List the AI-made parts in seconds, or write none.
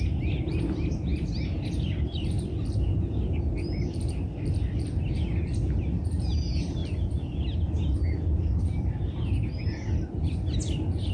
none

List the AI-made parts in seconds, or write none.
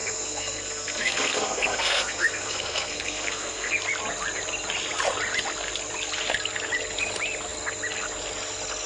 0.0-3.7 (codec, SNAC)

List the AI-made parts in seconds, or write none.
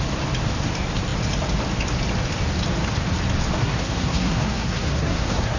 3.6-5.6 (codec, SNAC)